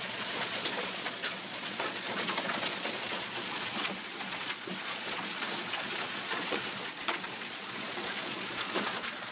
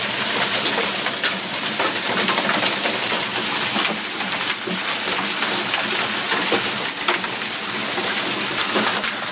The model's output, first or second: first